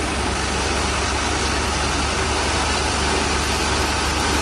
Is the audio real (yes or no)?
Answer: yes